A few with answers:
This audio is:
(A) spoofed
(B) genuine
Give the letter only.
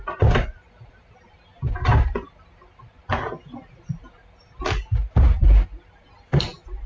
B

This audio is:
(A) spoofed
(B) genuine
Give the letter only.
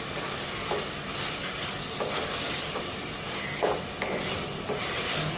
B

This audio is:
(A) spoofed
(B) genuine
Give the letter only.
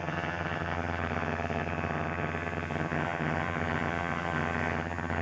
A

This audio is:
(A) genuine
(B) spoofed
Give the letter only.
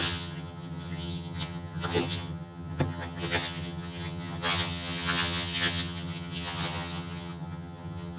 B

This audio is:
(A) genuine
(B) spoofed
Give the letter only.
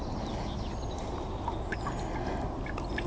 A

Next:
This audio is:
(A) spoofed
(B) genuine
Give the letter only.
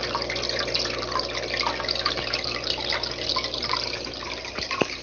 B